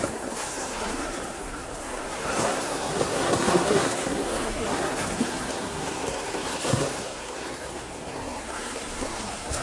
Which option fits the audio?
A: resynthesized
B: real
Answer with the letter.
A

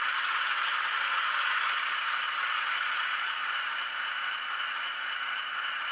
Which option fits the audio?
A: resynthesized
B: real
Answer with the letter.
B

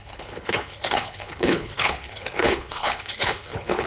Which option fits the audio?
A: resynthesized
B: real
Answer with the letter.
A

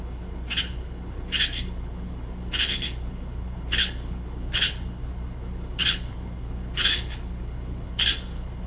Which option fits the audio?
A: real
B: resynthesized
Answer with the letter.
B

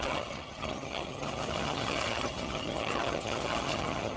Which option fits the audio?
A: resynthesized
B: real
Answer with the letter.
A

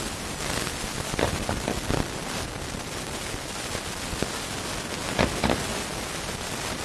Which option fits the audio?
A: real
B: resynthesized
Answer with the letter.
A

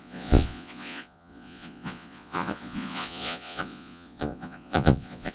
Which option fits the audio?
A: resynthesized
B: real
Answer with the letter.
A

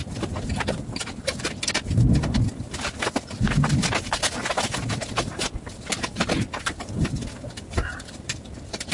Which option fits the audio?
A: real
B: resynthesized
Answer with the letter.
A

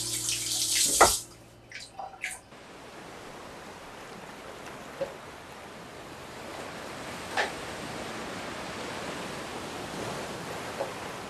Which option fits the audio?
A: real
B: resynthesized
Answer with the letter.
A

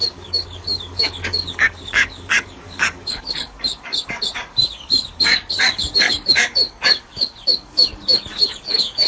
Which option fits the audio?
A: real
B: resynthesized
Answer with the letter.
B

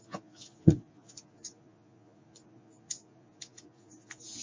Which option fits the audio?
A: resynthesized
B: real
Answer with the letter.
A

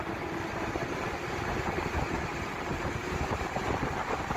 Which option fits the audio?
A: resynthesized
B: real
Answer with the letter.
B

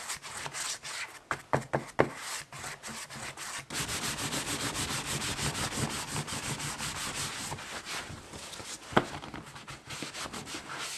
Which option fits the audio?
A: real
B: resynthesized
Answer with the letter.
A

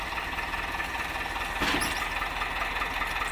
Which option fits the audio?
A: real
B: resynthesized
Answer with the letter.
A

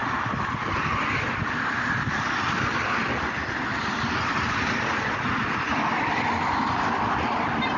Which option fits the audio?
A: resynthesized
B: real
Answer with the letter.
B